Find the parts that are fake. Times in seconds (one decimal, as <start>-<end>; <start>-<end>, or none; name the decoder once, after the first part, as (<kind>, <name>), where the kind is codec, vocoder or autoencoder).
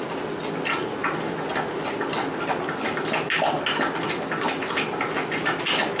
none